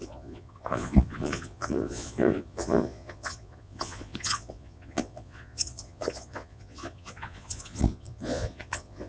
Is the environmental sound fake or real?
fake